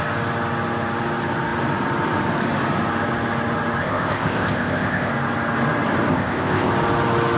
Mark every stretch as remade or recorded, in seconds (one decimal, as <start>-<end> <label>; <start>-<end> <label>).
0.0-3.8 recorded; 3.8-5.1 remade; 5.1-6.1 recorded; 6.1-6.7 remade; 6.7-7.4 recorded

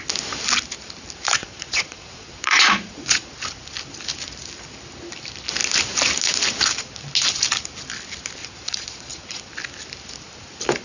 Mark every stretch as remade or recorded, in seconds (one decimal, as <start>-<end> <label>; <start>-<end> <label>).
0.0-1.4 recorded; 1.4-3.3 remade; 3.3-8.4 recorded; 8.4-9.5 remade; 9.5-10.8 recorded

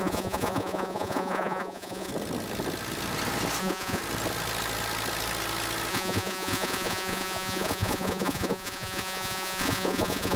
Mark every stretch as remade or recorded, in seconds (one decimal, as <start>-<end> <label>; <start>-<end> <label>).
0.0-2.1 remade; 2.1-3.6 recorded; 3.6-4.0 remade; 4.0-5.9 recorded; 5.9-10.4 remade